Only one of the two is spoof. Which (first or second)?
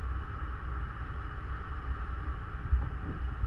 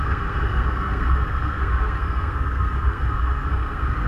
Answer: second